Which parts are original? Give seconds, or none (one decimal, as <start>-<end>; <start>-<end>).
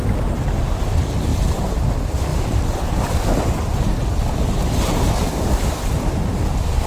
0.0-1.3; 1.9-6.9